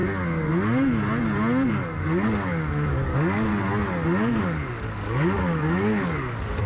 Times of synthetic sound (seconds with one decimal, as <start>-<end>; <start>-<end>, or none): 1.7-3.5; 4.4-6.7